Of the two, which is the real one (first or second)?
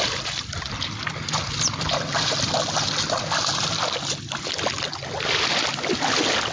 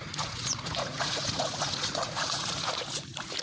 first